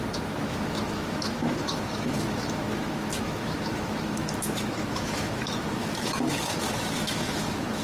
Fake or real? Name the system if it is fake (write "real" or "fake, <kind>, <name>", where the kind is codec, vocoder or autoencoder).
fake, autoencoder, DAC-VAE